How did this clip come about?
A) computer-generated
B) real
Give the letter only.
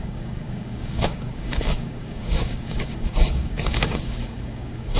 A